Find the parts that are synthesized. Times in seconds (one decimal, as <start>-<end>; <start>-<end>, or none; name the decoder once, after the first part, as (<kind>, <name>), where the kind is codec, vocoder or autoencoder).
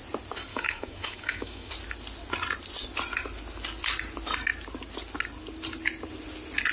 0.5-1.7 (autoencoder, DAC-VAE)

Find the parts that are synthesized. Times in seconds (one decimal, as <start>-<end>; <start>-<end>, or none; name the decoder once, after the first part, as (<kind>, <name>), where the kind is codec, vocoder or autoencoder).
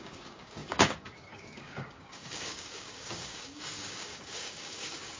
0.0-5.2 (codec, DAC)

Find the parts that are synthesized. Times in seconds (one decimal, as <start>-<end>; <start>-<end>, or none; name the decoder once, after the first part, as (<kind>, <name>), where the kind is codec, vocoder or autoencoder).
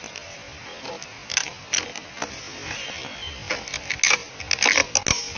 none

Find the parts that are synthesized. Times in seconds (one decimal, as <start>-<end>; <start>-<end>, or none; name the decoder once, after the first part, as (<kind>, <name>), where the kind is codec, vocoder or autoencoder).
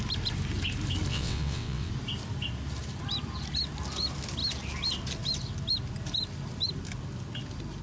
1.1-1.9 (vocoder, WaveNeXt)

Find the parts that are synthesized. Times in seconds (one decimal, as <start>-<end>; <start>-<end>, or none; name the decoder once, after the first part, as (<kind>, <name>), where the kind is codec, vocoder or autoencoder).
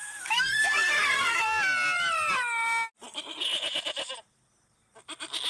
0.0-1.4 (codec, SNAC)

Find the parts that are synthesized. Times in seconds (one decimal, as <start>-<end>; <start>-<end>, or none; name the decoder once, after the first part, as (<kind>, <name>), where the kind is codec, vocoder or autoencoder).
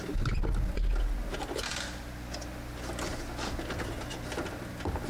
none